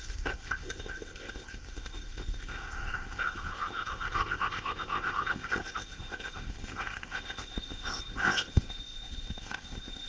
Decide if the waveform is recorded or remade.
remade